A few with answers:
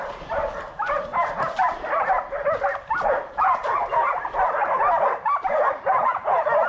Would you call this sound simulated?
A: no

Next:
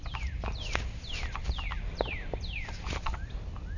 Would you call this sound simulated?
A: no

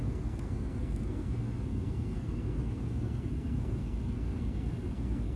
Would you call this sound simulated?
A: yes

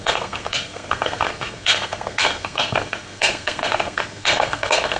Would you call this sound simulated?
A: yes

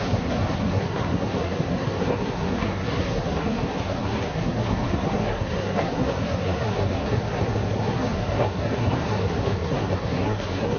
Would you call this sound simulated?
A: yes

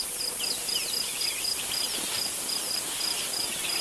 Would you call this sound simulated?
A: no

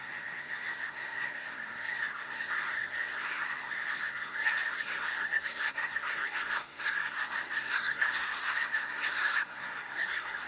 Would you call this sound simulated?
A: yes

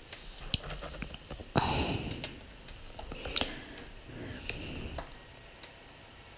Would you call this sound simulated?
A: no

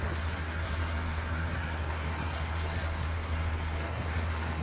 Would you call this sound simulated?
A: yes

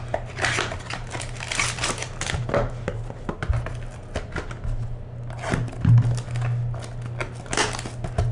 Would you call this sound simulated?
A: no